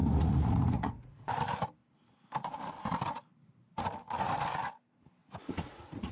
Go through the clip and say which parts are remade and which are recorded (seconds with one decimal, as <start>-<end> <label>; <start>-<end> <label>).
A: 0.0-1.1 remade; 1.1-5.2 recorded; 5.2-6.1 remade